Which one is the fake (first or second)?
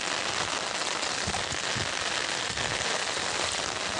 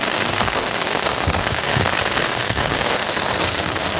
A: second